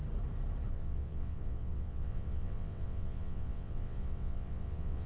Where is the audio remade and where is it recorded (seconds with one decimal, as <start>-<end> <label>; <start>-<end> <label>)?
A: 0.0-0.7 recorded; 0.7-5.1 remade